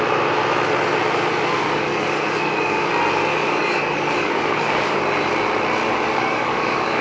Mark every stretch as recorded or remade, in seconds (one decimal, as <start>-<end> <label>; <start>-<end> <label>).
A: 0.0-1.6 recorded; 1.6-2.9 remade; 2.9-3.3 recorded; 3.3-5.0 remade; 5.0-5.9 recorded; 5.9-7.0 remade